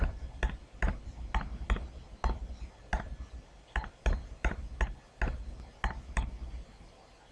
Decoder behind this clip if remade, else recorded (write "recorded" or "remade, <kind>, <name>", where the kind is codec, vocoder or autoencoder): recorded